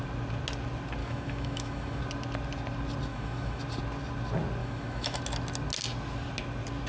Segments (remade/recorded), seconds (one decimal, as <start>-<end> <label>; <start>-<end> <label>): 0.0-1.0 recorded; 1.0-2.0 remade; 2.0-3.1 recorded; 3.1-3.6 remade; 3.6-4.6 recorded; 4.6-5.2 remade; 5.2-6.9 recorded